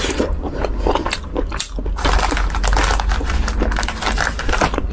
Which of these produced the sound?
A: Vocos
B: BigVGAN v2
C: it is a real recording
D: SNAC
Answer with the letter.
C